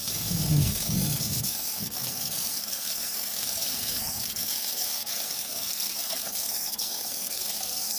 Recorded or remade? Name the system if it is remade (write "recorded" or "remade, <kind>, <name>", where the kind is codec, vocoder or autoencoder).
remade, codec, SNAC